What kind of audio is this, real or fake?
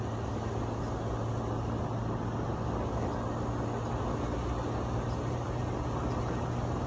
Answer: real